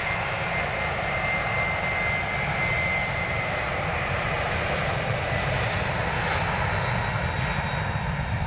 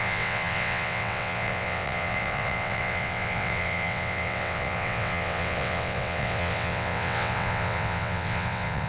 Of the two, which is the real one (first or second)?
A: first